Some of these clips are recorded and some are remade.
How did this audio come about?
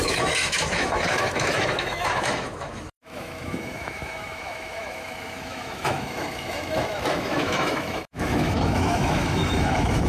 remade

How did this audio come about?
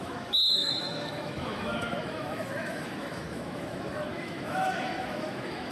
remade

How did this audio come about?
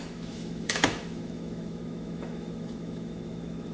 remade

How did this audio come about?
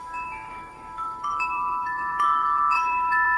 remade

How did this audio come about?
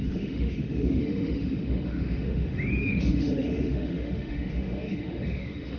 remade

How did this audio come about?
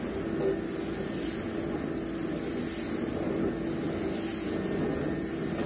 recorded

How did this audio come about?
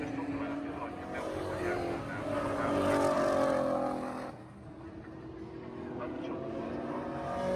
recorded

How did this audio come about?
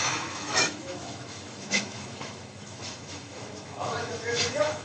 remade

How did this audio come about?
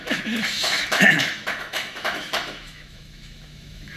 remade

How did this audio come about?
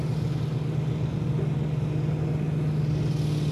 recorded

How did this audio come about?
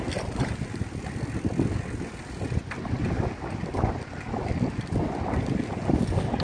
recorded